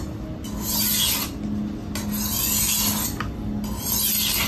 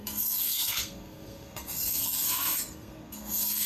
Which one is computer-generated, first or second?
second